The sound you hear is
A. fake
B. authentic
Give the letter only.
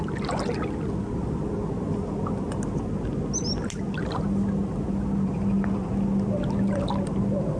B